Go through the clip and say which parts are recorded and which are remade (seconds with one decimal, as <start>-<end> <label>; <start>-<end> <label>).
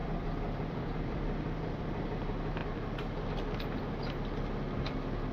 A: 0.0-1.8 remade; 1.8-5.3 recorded